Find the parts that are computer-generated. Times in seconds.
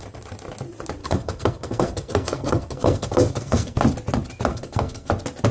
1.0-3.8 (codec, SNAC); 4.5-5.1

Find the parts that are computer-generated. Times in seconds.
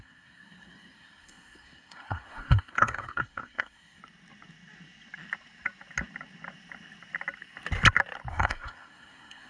0.0-4.0 (codec, SNAC); 8.3-9.5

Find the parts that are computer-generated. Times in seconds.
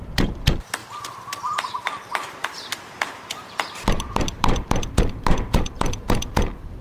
0.0-0.8 (vocoder, BigVGAN v2); 1.4-6.8